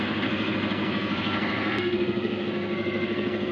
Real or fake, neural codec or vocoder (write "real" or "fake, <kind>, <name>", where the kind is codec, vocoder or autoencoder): fake, codec, SNAC